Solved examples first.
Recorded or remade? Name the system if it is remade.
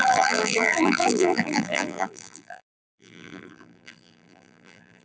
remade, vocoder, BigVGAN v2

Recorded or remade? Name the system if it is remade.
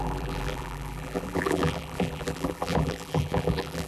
remade, vocoder, BigVGAN v2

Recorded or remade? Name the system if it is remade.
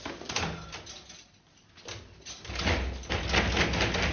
recorded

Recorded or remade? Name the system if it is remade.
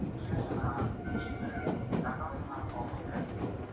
remade, vocoder, BigVGAN v2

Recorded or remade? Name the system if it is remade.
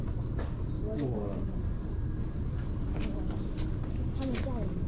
recorded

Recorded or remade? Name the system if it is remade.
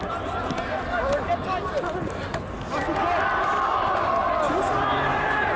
recorded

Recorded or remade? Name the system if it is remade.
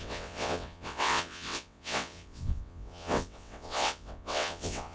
remade, vocoder, WaveNeXt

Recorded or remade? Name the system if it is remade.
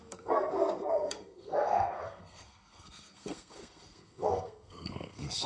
remade, codec, SNAC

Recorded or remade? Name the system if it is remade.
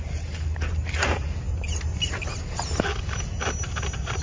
recorded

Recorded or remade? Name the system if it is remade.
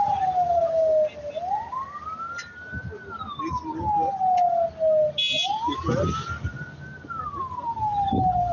recorded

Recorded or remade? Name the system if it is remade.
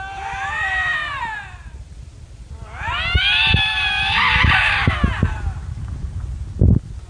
recorded